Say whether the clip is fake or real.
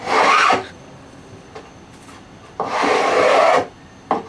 real